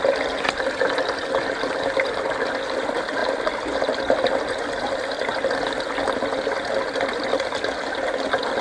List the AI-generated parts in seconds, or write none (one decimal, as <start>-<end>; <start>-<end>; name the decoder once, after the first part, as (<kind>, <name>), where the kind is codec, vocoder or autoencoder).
none